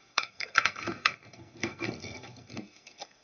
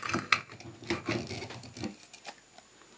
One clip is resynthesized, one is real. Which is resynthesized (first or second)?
first